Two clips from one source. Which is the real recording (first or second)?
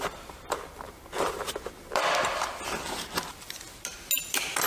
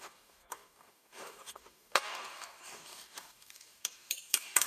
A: first